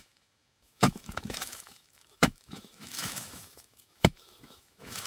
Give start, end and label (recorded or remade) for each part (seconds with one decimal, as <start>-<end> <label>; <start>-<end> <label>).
0.0-5.1 remade